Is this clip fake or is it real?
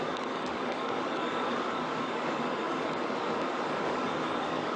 fake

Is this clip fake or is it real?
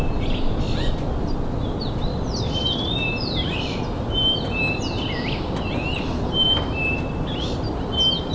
real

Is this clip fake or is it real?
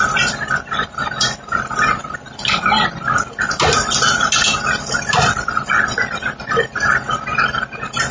real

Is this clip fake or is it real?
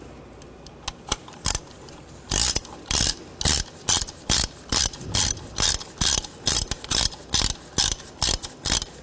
real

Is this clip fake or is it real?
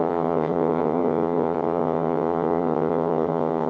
fake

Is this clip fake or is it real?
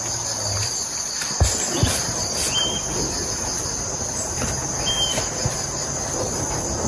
real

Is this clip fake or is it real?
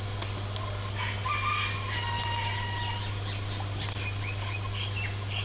real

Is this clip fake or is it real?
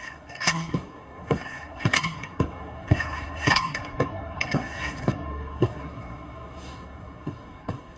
fake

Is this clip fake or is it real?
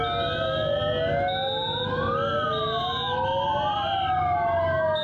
real